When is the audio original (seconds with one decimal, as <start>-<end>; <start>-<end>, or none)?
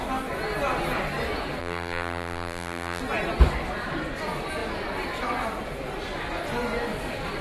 0.0-1.6; 3.0-7.4